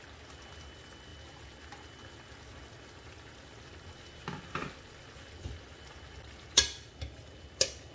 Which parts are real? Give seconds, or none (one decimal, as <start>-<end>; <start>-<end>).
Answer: 0.0-7.9